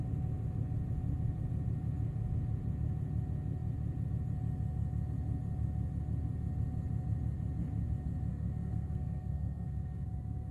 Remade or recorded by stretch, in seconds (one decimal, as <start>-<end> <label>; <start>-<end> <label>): 0.0-8.3 recorded; 8.3-10.5 remade